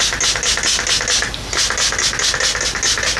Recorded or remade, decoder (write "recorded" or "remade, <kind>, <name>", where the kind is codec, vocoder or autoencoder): recorded